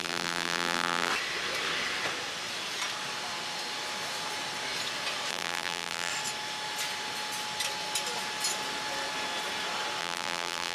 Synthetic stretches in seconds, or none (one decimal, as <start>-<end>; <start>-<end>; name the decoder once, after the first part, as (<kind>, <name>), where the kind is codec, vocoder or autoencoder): 0.0-1.1 (vocoder, BigVGAN v2); 5.3-6.1; 10.0-10.7